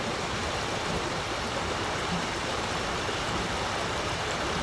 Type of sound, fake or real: fake